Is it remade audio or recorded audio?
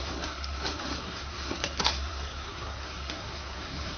remade